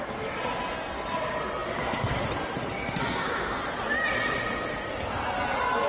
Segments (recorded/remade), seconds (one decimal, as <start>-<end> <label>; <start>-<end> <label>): 0.0-1.6 recorded; 1.6-5.1 remade; 5.1-5.9 recorded